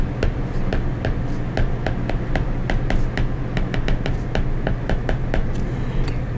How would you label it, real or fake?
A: real